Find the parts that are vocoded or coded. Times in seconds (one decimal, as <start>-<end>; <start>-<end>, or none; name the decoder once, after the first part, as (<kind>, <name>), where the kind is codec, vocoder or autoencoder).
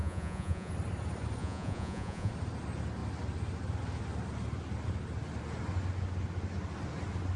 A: 0.0-0.7 (vocoder, Vocos); 1.4-2.3